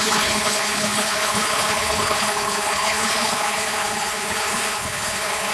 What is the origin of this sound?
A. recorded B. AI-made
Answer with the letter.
B